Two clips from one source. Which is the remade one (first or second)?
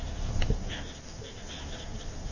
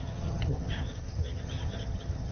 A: second